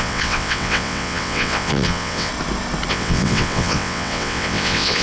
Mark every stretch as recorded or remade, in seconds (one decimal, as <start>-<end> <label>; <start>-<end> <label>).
0.0-2.3 remade; 2.3-2.9 recorded; 2.9-5.0 remade